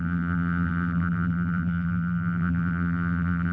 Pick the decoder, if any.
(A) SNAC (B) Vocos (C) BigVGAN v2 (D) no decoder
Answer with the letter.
C